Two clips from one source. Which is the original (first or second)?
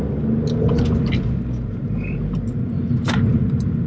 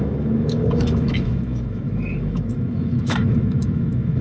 first